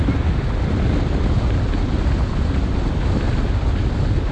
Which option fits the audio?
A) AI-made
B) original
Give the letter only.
B